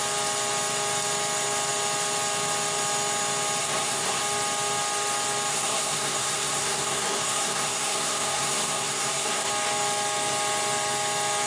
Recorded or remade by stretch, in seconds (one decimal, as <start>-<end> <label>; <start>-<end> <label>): 0.0-3.6 recorded; 3.6-4.2 remade; 4.2-5.5 recorded; 5.5-9.5 remade; 9.5-11.5 recorded